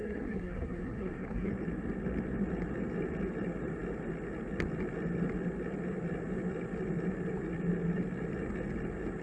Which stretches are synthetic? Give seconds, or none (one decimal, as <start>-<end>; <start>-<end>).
0.0-1.5